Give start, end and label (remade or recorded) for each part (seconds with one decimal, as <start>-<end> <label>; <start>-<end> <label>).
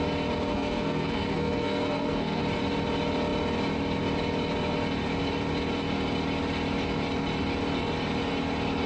0.0-0.5 recorded; 0.5-2.4 remade; 2.4-8.9 recorded